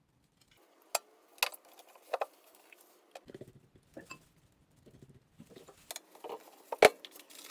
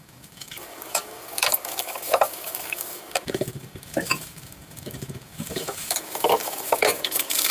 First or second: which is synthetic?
second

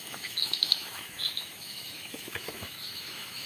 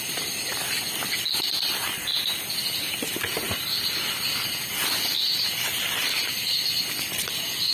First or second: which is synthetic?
first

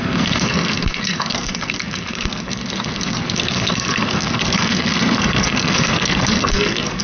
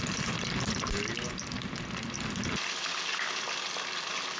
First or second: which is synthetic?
first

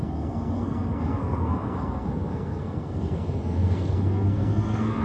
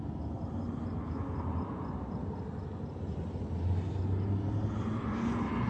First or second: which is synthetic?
first